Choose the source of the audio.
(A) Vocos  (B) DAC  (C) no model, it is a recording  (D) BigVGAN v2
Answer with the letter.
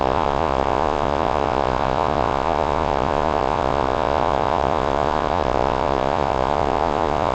A